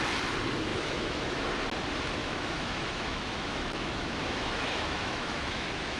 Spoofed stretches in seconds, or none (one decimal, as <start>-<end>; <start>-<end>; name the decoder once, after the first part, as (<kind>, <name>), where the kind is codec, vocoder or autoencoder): 0.7-1.4 (autoencoder, DAC-VAE); 2.2-6.0